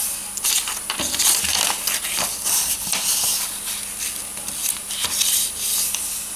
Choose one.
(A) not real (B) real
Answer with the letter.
B